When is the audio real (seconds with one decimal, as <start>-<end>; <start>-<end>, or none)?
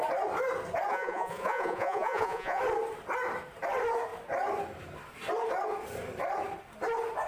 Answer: 0.0-0.9; 2.6-7.3